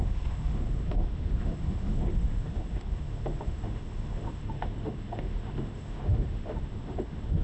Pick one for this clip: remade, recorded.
remade